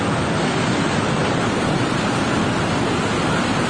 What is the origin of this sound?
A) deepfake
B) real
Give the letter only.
B